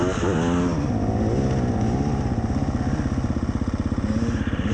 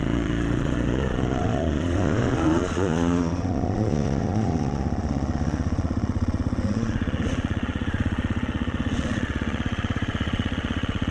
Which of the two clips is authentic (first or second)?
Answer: first